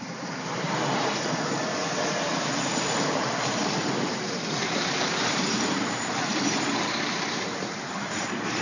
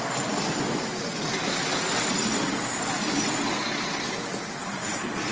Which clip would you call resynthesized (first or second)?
first